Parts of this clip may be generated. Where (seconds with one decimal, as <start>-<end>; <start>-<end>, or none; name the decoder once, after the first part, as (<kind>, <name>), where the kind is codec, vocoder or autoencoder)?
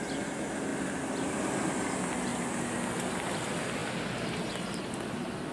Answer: none